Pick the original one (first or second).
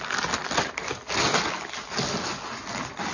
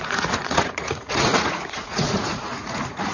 first